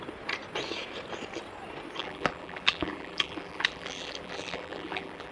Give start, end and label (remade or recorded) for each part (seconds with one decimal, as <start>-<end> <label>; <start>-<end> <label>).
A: 0.0-2.0 recorded; 2.0-5.3 remade